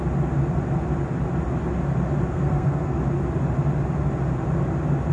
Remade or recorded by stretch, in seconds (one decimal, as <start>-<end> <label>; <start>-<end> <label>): 0.0-2.3 recorded; 2.3-3.0 remade; 3.0-5.1 recorded